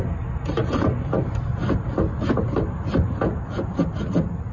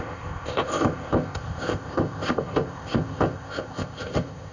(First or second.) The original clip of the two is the first